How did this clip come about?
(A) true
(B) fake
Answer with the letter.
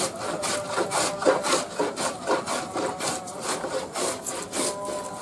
A